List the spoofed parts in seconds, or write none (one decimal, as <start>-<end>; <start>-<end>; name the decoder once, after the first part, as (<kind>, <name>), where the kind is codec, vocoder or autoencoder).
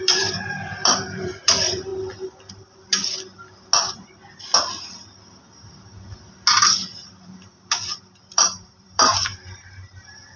0.0-1.9 (vocoder, BigVGAN v2); 2.5-3.0; 7.1-10.4